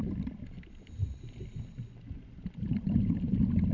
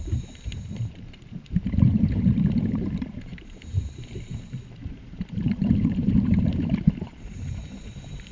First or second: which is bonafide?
first